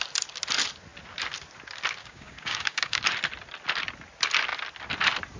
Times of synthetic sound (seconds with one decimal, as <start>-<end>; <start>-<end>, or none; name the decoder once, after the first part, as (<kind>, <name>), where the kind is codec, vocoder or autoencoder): 2.0-3.0 (codec, DAC)